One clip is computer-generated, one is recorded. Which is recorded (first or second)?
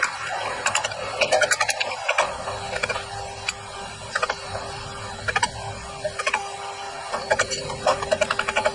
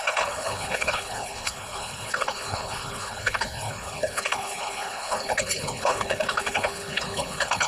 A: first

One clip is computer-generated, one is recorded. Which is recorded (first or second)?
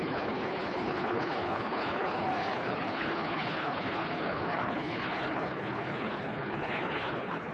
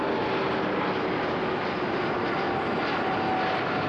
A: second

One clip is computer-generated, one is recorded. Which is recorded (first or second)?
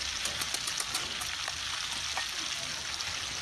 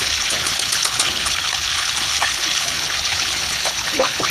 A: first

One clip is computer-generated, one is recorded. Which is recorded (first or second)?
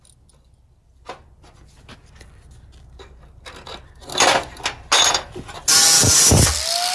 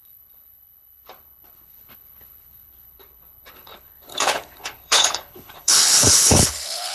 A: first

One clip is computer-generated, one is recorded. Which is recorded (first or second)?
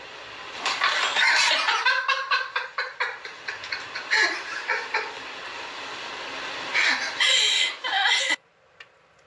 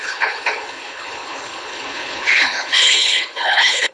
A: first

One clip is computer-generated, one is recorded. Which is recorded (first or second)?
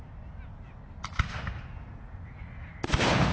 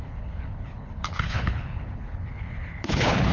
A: first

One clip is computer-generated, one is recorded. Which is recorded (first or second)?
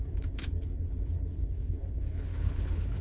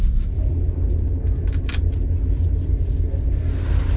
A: second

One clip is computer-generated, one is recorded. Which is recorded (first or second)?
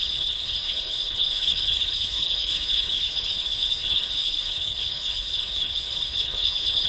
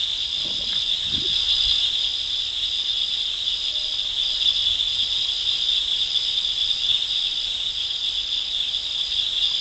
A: second